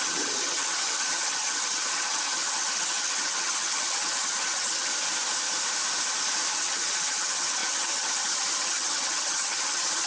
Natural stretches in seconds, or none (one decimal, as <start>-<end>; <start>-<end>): 4.9-6.5